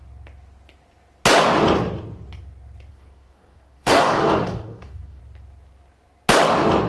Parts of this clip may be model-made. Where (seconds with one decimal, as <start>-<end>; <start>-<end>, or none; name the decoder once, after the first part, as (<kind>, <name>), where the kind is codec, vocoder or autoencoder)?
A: 2.9-5.2 (codec, DAC)